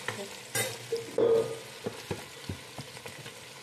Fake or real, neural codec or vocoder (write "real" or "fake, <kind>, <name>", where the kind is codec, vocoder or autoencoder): real